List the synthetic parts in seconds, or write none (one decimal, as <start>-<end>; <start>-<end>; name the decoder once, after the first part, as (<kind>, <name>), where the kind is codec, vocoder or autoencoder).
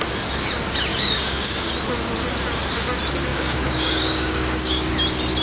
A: 0.9-1.7 (codec, DAC); 3.3-4.9